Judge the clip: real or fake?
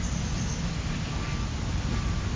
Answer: real